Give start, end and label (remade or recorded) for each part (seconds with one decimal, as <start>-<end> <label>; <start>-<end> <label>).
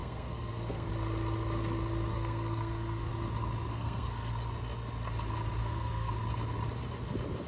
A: 0.0-0.9 remade; 0.9-2.1 recorded; 2.1-3.1 remade; 3.1-3.7 recorded; 3.7-4.3 remade; 4.3-5.6 recorded; 5.6-6.1 remade; 6.1-7.5 recorded